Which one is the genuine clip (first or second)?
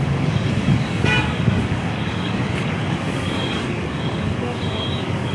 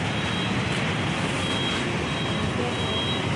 second